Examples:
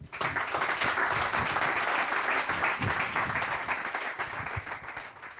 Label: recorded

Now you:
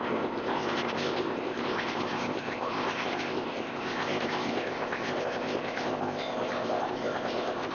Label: remade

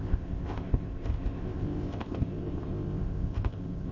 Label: remade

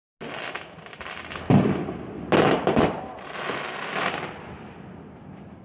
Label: recorded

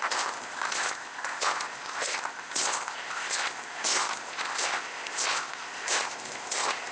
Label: remade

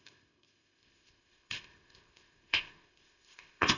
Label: remade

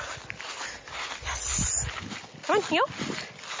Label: recorded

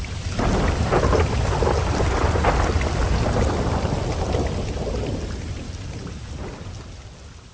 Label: recorded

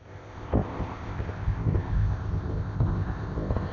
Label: remade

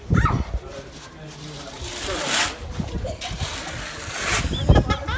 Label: recorded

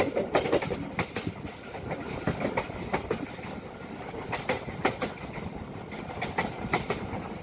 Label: recorded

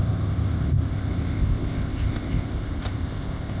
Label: remade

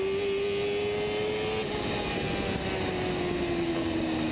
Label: recorded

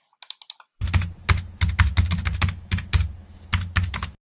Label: recorded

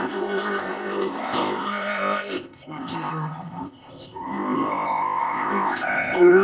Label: remade